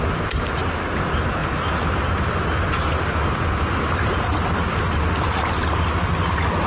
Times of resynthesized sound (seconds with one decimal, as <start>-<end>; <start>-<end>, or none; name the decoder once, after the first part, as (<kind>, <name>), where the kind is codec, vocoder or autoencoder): none